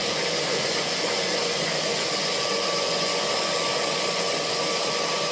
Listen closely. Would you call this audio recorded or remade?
remade